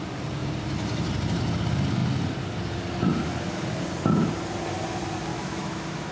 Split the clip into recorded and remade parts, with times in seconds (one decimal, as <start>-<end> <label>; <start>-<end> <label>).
0.0-5.3 recorded; 5.3-6.1 remade